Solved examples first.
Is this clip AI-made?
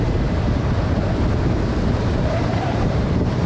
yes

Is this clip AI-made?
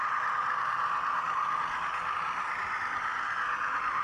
no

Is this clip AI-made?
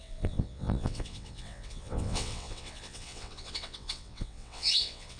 yes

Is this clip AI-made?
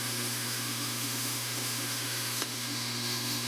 yes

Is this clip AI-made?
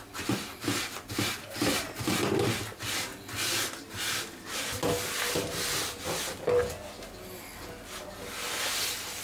no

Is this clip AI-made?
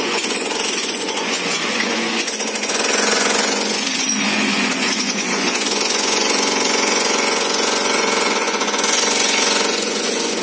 yes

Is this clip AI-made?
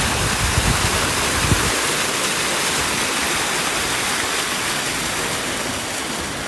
no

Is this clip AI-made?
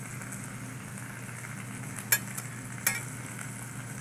no